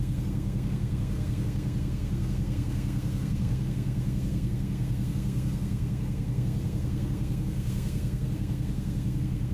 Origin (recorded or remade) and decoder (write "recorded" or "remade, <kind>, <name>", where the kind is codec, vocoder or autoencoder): remade, codec, SNAC